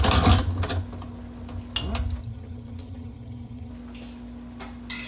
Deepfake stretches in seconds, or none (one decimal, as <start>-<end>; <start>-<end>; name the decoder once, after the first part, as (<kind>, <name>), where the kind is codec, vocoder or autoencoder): 2.2-3.7 (vocoder, HiFi-GAN)